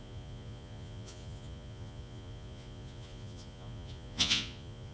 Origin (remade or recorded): remade